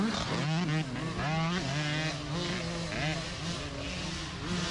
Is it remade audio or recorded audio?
recorded